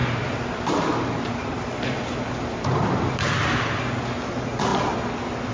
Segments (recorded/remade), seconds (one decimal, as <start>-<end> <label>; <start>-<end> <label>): 0.0-3.3 remade; 3.3-5.5 recorded